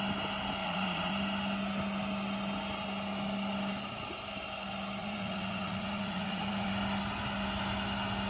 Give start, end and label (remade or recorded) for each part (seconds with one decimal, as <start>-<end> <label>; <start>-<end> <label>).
0.0-0.6 recorded; 0.6-1.1 remade; 1.1-5.0 recorded; 5.0-6.7 remade; 6.7-8.3 recorded